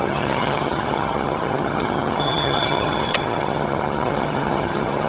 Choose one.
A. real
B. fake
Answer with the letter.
B